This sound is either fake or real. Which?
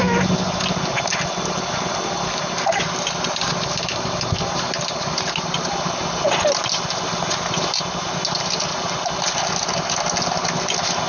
real